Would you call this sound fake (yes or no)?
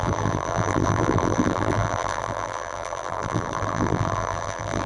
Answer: yes